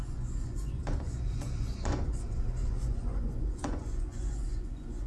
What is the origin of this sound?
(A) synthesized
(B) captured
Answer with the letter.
A